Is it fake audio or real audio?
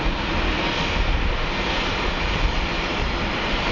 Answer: real